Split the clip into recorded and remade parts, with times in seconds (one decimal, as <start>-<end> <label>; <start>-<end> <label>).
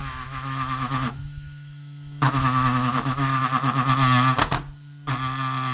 0.0-3.4 remade; 3.4-5.7 recorded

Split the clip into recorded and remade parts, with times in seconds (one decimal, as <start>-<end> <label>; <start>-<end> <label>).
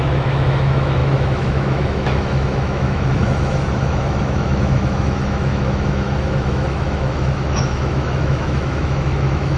0.0-9.6 remade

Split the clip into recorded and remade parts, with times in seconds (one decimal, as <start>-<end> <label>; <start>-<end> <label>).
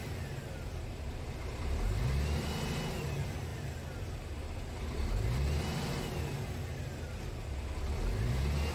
0.0-8.7 recorded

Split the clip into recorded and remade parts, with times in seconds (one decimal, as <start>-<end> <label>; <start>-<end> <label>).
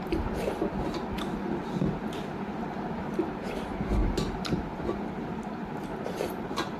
0.0-6.8 recorded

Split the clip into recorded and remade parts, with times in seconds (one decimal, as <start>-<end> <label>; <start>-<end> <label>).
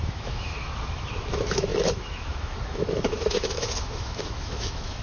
0.0-5.0 remade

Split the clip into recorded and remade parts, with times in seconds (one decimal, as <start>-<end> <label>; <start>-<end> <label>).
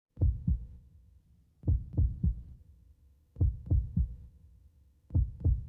0.0-1.2 remade; 1.2-2.6 recorded; 2.6-5.7 remade